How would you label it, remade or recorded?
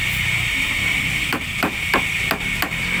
recorded